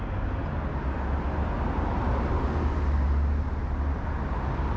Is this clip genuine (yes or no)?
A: yes